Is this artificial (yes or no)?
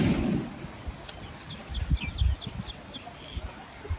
no